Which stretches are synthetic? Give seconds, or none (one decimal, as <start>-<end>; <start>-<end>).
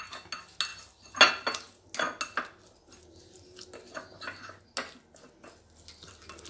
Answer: none